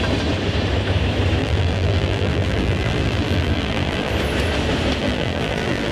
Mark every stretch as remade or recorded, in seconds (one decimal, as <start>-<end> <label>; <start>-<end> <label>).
0.0-1.4 recorded; 1.4-4.1 remade; 4.1-5.0 recorded; 5.0-5.9 remade